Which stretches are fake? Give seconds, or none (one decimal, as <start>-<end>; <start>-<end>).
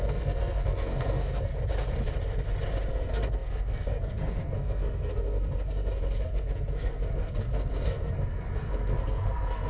0.0-1.5; 2.9-9.7